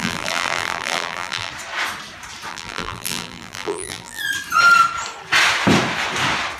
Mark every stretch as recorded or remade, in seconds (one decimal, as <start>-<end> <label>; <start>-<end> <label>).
0.0-1.5 remade; 1.5-2.5 recorded; 2.5-4.2 remade; 4.2-6.6 recorded